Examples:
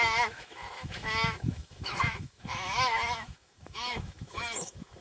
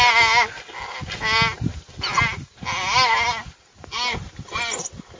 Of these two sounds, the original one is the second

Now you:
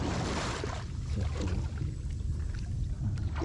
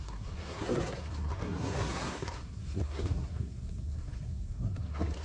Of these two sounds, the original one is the first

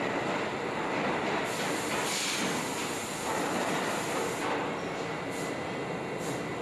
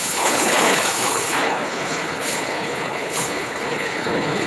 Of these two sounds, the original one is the first